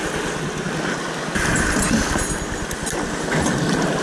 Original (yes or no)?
yes